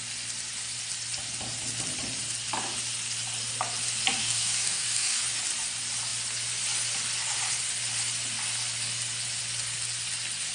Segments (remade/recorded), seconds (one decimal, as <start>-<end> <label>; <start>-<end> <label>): 0.0-4.2 recorded; 4.2-5.2 remade; 5.2-10.5 recorded